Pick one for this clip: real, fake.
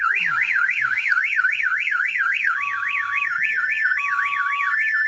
fake